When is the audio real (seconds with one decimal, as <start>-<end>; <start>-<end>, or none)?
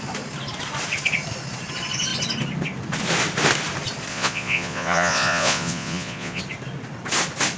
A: 0.0-4.1; 6.4-7.6